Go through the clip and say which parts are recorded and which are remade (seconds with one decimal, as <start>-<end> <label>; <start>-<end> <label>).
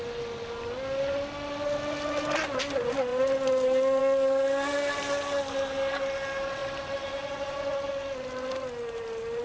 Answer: 0.0-9.4 recorded